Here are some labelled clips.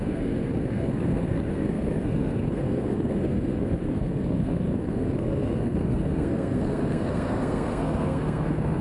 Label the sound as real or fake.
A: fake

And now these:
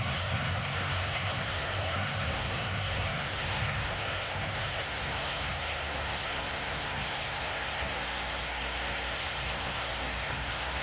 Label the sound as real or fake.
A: fake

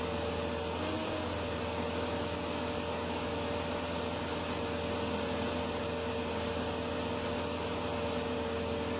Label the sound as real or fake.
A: real